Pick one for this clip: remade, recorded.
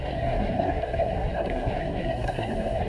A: remade